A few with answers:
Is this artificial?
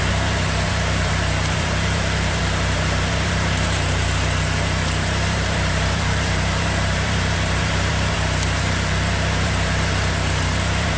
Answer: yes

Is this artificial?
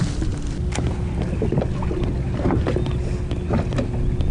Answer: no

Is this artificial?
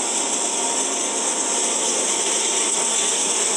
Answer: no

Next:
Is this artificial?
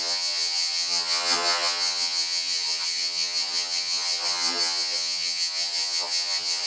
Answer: yes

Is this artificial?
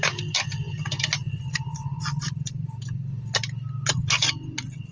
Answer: no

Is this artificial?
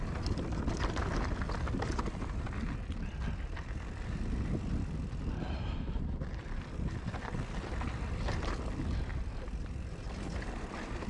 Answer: no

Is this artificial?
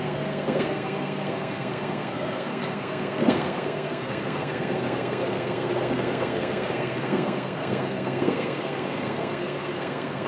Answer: yes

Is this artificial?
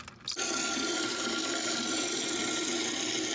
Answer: no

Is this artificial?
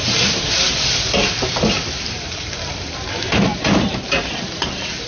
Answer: yes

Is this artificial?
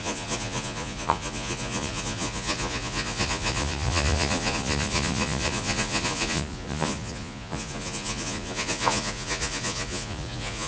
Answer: yes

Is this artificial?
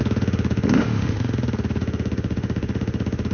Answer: yes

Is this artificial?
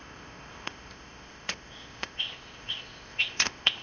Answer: yes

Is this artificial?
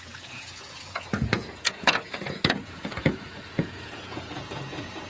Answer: yes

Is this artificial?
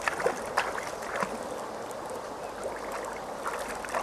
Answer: no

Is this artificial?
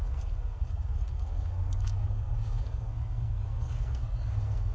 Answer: yes